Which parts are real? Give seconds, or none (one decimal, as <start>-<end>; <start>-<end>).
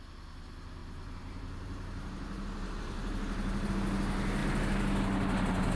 0.0-0.8; 3.7-5.8